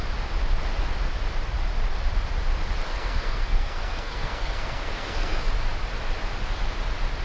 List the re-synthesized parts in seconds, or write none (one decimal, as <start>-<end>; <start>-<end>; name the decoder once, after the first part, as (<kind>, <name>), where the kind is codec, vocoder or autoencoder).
2.9-5.5 (codec, SNAC)